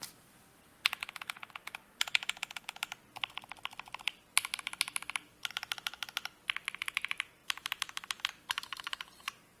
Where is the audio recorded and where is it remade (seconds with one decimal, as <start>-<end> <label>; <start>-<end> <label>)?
0.0-7.4 recorded; 7.4-8.3 remade; 8.3-9.6 recorded